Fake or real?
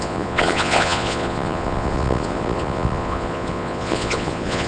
fake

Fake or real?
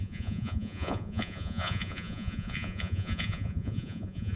fake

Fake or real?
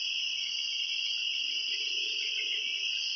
real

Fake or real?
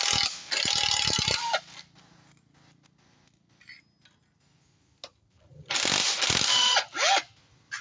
real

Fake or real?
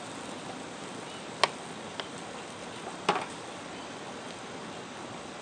real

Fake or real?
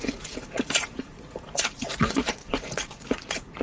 fake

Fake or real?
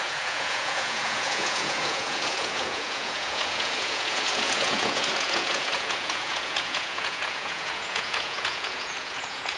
fake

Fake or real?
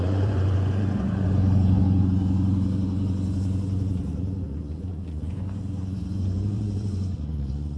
fake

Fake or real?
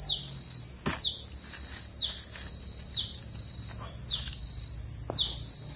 real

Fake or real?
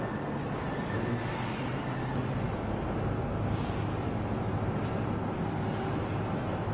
real